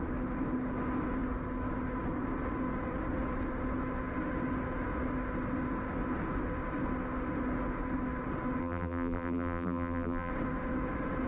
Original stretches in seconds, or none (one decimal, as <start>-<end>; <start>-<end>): 0.0-8.6; 10.3-11.3

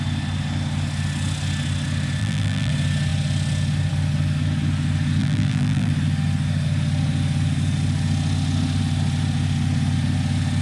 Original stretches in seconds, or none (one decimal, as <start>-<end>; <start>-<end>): 0.0-2.2; 2.7-5.2; 5.9-10.6

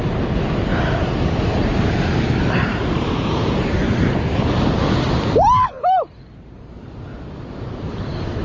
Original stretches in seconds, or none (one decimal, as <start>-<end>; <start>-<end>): 5.7-7.8

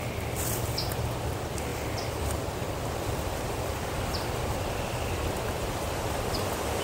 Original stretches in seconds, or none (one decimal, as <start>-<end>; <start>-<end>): 0.0-1.7; 4.8-6.8

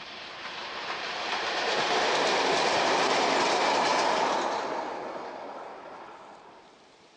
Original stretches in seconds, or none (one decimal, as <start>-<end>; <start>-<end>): 3.9-5.4

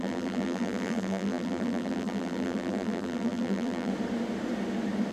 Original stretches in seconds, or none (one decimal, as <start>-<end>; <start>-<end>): 3.9-5.1

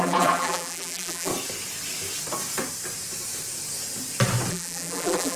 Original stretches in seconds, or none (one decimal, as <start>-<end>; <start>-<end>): 1.3-4.5